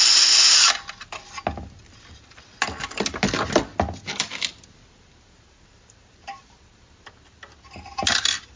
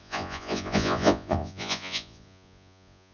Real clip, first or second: first